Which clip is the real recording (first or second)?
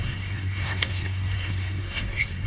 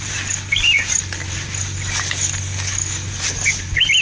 second